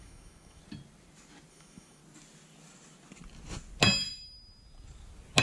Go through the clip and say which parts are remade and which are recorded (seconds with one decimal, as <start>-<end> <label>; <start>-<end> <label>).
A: 0.0-0.6 remade; 0.6-1.5 recorded; 1.5-2.0 remade; 2.0-5.4 recorded